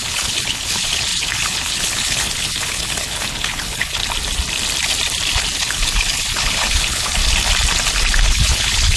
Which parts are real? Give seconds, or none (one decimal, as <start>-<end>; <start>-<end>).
4.0-5.6; 7.2-8.2